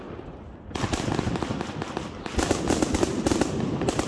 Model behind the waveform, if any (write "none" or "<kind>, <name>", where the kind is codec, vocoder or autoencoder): none